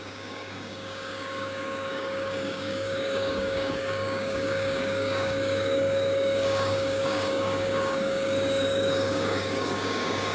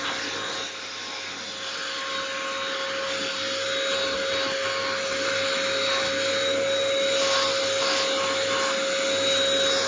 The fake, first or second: first